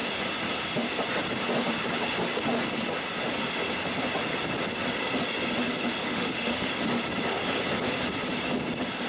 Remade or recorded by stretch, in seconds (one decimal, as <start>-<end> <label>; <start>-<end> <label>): 0.0-6.1 recorded; 6.1-6.7 remade; 6.7-9.1 recorded